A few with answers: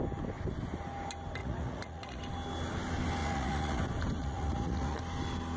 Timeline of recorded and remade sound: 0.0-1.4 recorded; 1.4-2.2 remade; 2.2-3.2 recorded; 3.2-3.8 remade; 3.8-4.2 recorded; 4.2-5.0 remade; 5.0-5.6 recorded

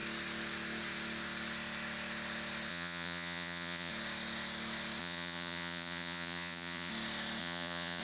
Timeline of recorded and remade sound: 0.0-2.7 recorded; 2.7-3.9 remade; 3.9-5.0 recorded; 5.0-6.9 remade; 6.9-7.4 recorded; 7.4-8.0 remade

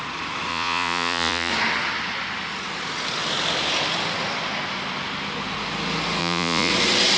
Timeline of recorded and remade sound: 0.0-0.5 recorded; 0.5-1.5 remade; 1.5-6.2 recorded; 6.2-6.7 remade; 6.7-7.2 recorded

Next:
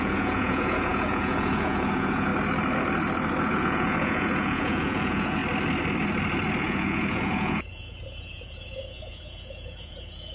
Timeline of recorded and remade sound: 0.0-2.3 remade; 2.3-3.6 recorded; 3.6-5.4 remade; 5.4-6.6 recorded; 6.6-10.3 remade

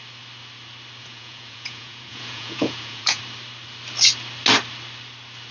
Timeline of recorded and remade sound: 0.0-1.0 recorded; 1.0-3.2 remade; 3.2-5.5 recorded

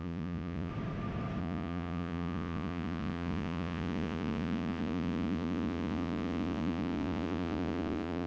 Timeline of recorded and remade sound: 0.0-0.7 remade; 0.7-1.4 recorded; 1.4-8.3 remade

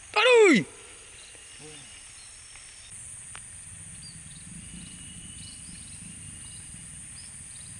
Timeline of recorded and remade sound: 0.0-7.8 recorded

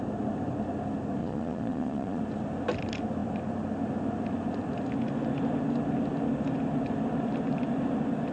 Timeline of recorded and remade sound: 0.0-1.2 recorded; 1.2-2.2 remade; 2.2-8.3 recorded